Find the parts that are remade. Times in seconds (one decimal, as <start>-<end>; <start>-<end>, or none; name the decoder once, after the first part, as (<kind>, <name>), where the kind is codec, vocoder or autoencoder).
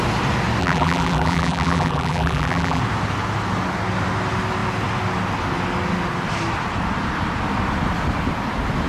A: 0.6-2.8 (vocoder, BigVGAN v2)